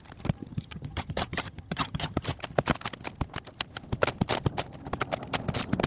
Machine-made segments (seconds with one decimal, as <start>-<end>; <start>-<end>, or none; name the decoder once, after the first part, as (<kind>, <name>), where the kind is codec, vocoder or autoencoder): 0.5-2.4 (vocoder, HiFi-GAN)

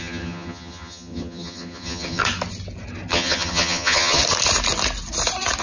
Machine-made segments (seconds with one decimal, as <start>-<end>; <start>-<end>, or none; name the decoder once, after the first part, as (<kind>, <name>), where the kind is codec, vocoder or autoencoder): 0.0-2.2 (vocoder, HiFi-GAN); 3.1-4.2